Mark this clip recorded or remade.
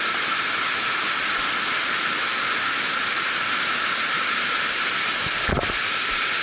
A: recorded